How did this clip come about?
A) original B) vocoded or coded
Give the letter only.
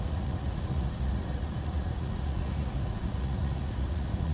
B